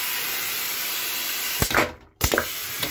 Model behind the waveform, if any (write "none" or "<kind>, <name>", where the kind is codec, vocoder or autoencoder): vocoder, BigVGAN v2